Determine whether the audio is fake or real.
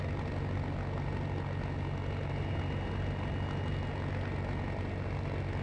real